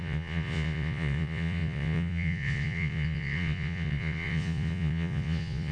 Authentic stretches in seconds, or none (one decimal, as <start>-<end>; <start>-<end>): none